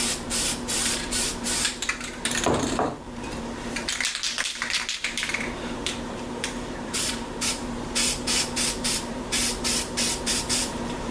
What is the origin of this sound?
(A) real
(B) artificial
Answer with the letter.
B